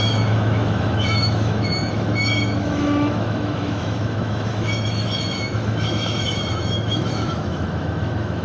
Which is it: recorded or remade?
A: remade